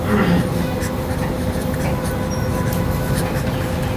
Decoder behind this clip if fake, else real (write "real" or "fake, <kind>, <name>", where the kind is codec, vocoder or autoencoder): real